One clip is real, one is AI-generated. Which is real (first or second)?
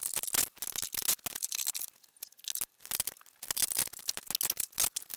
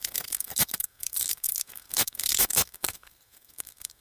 first